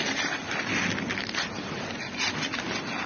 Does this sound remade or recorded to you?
recorded